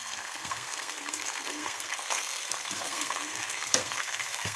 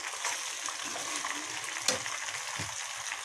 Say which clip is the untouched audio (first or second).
second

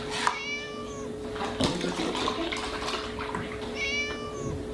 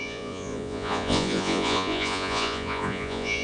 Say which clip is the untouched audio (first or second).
first